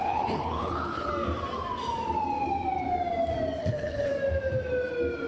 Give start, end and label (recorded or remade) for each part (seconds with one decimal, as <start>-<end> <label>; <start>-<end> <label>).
0.0-1.1 remade; 1.1-3.6 recorded; 3.6-4.1 remade; 4.1-5.3 recorded